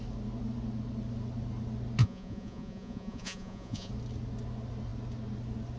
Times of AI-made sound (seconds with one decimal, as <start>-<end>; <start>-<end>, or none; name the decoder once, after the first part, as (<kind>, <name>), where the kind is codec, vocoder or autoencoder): 2.0-3.9 (vocoder, Vocos)